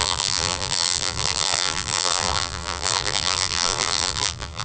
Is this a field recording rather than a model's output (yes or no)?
no